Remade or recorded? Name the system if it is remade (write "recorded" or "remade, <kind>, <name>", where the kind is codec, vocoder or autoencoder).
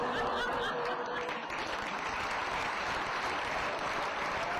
recorded